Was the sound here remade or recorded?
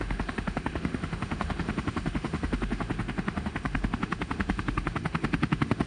remade